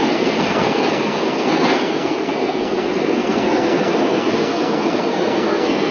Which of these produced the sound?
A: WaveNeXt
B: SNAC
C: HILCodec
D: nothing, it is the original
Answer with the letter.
B